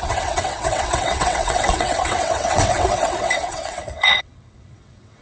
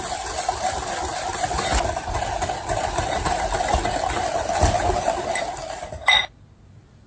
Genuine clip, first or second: second